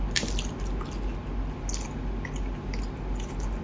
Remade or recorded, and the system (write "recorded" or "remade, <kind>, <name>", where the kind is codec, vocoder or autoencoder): recorded